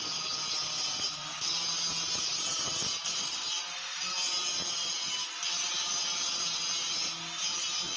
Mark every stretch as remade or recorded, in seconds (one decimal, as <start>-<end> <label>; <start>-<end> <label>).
0.0-8.0 recorded